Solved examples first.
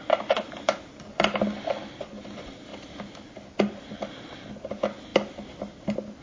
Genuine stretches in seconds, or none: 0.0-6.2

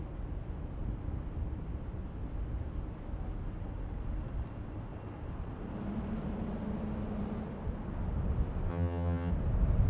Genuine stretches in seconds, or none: 0.0-8.7; 9.3-9.9

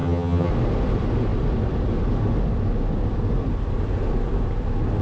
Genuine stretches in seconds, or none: 0.5-5.0

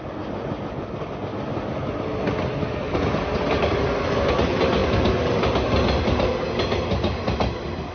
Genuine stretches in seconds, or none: 0.0-7.9

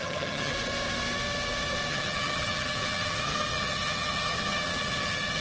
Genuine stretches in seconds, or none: 0.5-1.9